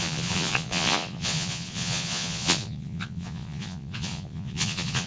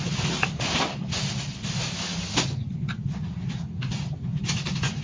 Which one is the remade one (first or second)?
first